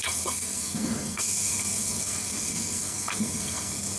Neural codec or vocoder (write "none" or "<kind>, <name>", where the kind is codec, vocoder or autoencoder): codec, SNAC